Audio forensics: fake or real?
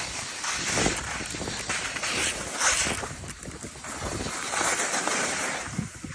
real